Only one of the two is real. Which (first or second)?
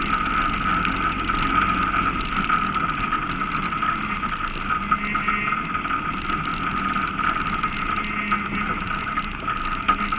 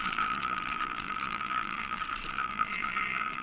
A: first